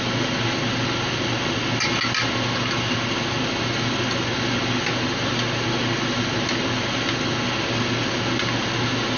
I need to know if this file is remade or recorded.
recorded